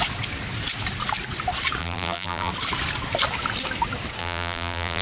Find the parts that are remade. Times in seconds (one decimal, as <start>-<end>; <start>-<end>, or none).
1.8-2.5; 4.2-5.0